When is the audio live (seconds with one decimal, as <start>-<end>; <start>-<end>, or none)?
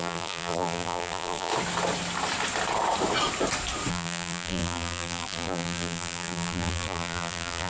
1.5-3.9